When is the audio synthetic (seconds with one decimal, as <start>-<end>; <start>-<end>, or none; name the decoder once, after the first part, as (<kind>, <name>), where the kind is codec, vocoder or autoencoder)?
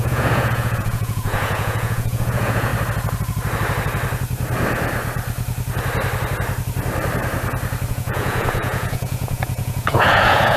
0.0-2.7 (vocoder, Vocos); 7.9-10.6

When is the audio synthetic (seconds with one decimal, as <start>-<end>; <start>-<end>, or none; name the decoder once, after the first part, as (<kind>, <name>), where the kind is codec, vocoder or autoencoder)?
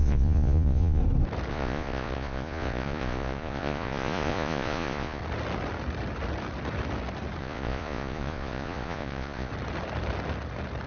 0.0-1.0 (vocoder, Vocos); 1.5-5.2; 7.4-9.5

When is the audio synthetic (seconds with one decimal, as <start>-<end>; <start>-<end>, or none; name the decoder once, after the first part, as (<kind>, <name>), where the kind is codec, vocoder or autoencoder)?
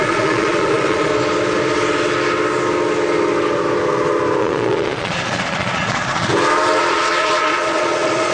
0.0-1.1 (vocoder, Vocos); 4.4-6.3; 6.8-8.3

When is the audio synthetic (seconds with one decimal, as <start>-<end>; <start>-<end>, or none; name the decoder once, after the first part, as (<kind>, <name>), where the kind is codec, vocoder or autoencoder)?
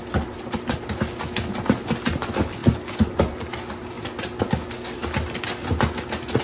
none